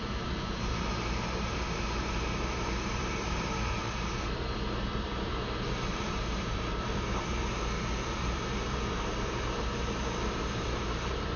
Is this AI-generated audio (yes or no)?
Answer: yes